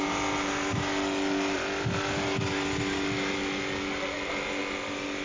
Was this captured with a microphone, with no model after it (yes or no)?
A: yes